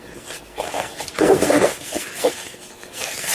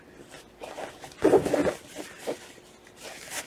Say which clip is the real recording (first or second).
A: second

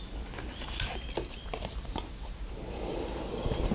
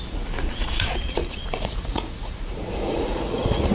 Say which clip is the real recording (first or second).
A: first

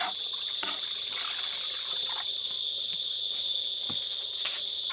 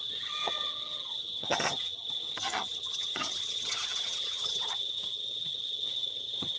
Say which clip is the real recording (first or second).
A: first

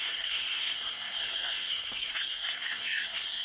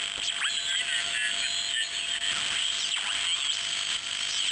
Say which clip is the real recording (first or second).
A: second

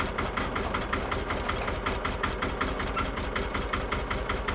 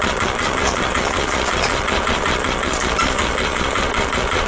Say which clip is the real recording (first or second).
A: first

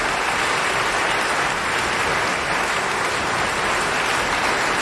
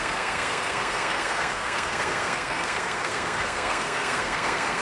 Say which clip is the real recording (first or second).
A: first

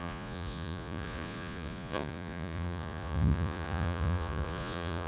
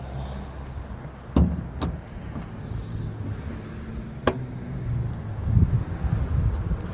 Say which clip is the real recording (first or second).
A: second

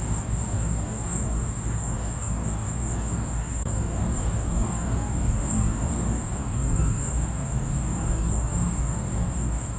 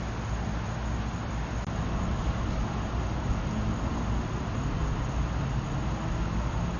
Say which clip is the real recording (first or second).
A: second